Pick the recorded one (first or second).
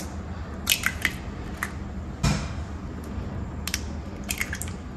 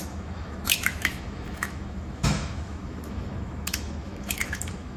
first